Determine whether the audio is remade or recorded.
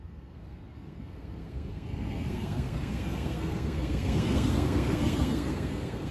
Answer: remade